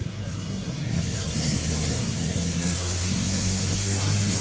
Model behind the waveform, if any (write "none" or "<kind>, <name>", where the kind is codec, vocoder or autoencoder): codec, SNAC